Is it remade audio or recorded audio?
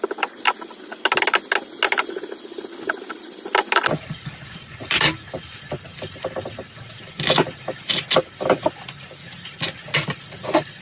recorded